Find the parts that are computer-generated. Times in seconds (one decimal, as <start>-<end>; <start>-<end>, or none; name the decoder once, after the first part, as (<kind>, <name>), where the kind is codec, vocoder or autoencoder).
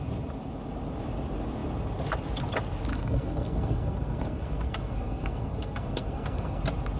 2.9-6.6 (codec, SNAC)